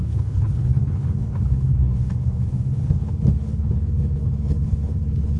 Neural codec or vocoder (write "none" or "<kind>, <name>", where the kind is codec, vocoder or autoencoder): codec, HILCodec